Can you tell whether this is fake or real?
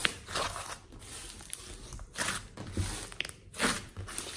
real